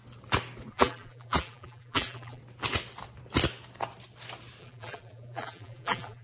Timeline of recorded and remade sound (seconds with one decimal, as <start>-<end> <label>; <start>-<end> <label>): 0.0-0.7 recorded; 0.7-2.4 remade; 2.4-4.6 recorded; 4.6-6.2 remade